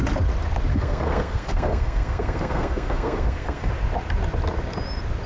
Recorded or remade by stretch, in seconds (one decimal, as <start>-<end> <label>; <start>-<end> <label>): 0.0-0.7 recorded; 0.7-3.7 remade; 3.7-5.3 recorded